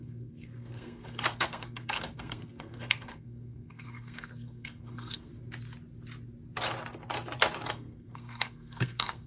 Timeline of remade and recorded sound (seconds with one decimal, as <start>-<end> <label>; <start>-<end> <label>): 0.0-5.3 remade; 5.3-7.7 recorded; 7.7-9.3 remade